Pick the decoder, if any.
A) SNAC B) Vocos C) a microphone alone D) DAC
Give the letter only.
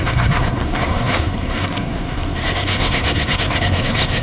A